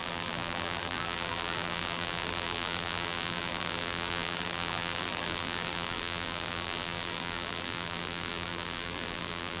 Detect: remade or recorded remade